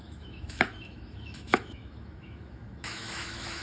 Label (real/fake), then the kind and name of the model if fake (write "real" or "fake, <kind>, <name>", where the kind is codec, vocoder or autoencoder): fake, autoencoder, DAC-VAE